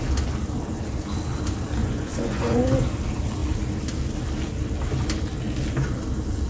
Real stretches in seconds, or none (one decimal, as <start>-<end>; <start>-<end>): 0.0-1.8; 2.6-6.5